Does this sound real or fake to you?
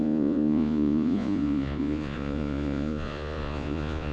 fake